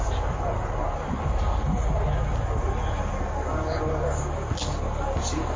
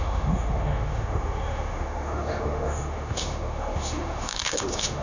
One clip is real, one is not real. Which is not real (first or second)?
second